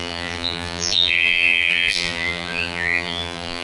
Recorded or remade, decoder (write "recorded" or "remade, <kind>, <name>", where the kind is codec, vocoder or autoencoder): remade, vocoder, BigVGAN v2